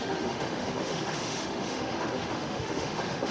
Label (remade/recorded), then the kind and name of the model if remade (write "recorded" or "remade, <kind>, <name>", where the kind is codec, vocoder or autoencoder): remade, autoencoder, DAC-VAE